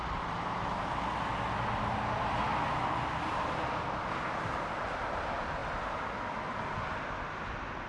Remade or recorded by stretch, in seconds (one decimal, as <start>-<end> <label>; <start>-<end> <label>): 0.0-7.9 recorded